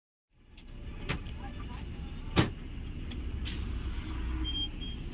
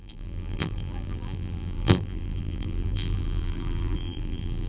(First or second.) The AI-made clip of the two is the second